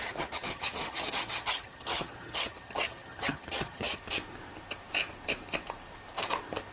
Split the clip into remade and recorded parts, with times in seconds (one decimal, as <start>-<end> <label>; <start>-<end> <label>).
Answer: 0.0-4.0 remade; 4.0-6.7 recorded